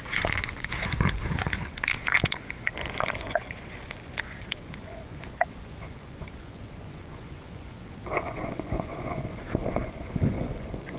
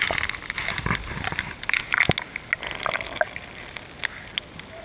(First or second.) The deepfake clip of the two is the first